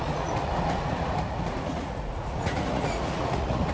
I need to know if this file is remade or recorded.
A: remade